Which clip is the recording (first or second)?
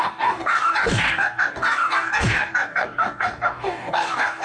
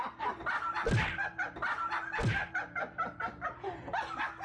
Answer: second